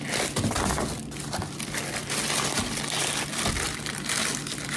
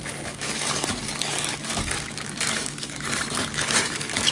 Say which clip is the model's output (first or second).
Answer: second